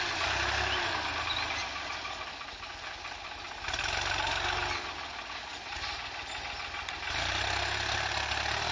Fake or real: real